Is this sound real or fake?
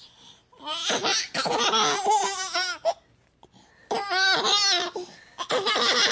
real